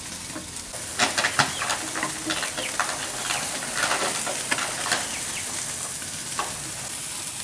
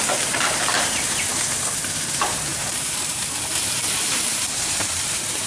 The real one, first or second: first